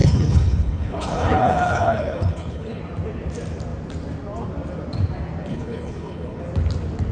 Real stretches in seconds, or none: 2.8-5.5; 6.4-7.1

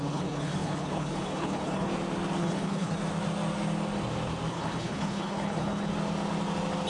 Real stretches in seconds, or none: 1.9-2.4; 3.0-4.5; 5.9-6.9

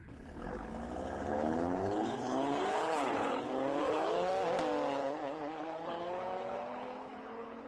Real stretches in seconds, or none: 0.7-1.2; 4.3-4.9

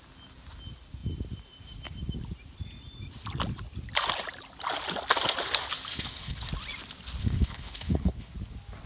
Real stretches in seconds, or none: 0.0-5.9; 6.5-7.2; 8.3-8.9